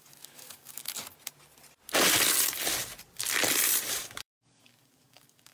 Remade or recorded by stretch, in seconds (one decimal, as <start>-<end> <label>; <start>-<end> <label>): 0.0-0.9 remade; 0.9-3.9 recorded; 3.9-5.5 remade